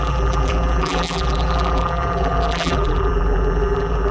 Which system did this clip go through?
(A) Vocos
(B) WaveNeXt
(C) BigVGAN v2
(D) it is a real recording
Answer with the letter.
C